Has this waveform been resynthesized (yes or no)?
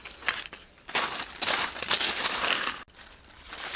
no